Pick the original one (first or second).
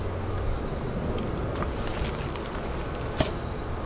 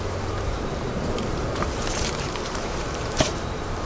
first